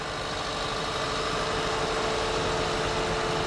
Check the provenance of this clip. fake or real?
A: real